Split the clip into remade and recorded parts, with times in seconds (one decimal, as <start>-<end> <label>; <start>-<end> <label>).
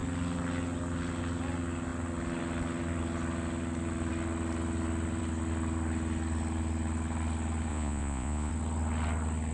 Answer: 0.0-7.7 recorded; 7.7-8.5 remade; 8.5-9.5 recorded